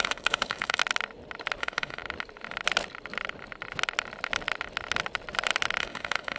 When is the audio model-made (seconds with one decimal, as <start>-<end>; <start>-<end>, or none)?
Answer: 0.0-0.8; 1.6-2.0; 5.8-6.4